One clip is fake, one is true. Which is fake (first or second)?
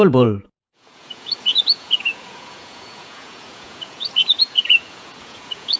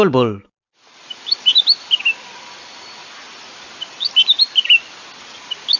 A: first